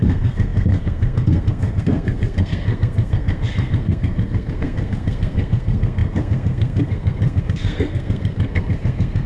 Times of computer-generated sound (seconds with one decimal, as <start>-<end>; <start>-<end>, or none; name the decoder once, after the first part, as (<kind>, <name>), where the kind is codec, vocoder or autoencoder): 0.0-9.3 (codec, SNAC)